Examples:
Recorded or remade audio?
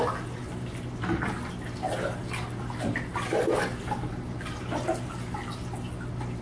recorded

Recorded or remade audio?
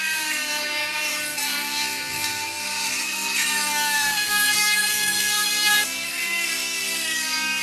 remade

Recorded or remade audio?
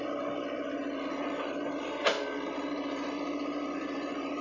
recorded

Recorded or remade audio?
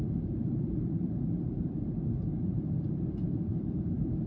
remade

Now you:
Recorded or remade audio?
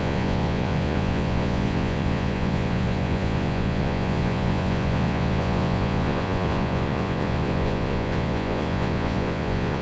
remade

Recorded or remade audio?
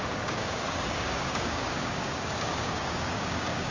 remade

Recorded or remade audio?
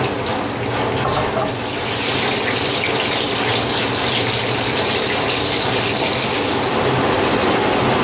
recorded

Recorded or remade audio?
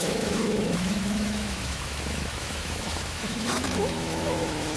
remade